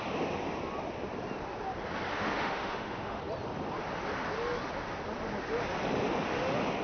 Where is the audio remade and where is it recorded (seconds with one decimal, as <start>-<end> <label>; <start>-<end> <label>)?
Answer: 0.0-2.1 recorded; 2.1-3.2 remade; 3.2-6.8 recorded